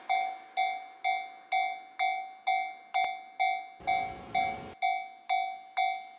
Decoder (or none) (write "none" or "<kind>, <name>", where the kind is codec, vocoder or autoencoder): none